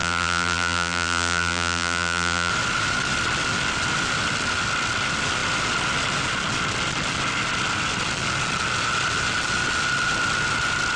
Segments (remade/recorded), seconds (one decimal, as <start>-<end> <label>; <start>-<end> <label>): 0.0-2.5 remade; 2.5-11.0 recorded

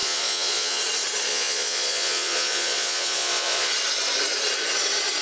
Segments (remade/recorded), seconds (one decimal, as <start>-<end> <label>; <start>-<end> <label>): 0.0-0.8 remade; 0.8-1.3 recorded; 1.3-3.7 remade; 3.7-5.2 recorded

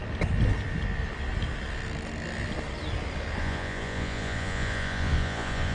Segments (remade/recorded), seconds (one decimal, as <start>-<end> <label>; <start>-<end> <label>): 0.0-3.4 recorded; 3.4-5.7 remade

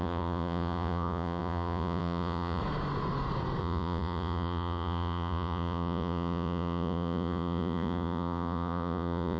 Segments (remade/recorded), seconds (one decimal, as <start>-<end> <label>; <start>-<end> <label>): 0.0-2.6 remade; 2.6-3.6 recorded; 3.6-9.4 remade